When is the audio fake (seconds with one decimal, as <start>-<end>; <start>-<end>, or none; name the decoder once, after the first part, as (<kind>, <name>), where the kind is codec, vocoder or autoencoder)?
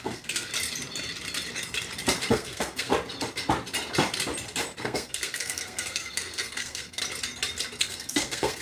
0.0-0.5 (codec, SNAC); 2.3-2.9; 4.8-7.0; 7.8-8.6